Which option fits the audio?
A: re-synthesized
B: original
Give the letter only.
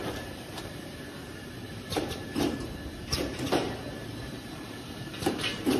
A